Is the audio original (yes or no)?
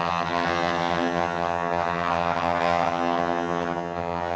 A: no